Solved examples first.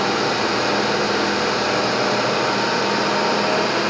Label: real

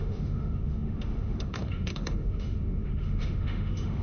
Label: fake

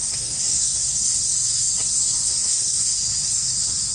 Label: fake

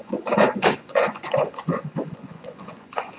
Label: fake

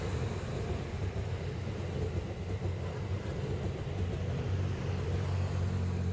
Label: real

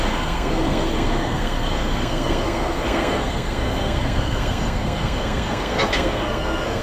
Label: fake